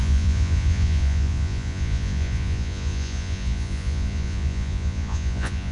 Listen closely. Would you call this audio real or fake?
fake